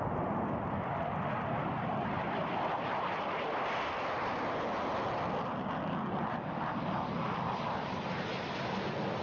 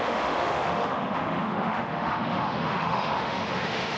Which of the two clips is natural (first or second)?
first